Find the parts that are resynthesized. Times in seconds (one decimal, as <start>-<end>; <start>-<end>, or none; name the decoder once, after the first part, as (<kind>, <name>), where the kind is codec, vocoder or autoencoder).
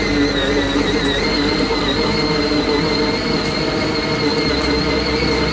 none